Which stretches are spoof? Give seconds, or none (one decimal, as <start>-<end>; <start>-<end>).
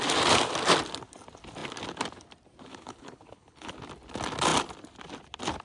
2.7-3.7